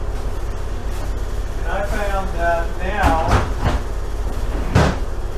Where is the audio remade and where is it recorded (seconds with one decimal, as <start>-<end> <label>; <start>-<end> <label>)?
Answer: 0.0-5.4 recorded